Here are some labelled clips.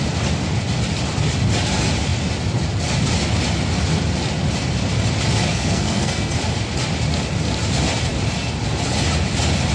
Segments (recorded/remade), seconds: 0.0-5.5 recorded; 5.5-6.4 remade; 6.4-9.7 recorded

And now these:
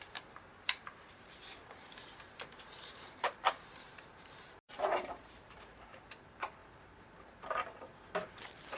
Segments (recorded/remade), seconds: 0.0-6.6 remade; 6.6-7.4 recorded; 7.4-7.9 remade; 7.9-8.8 recorded